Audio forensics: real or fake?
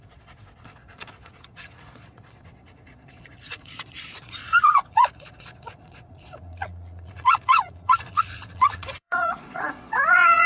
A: fake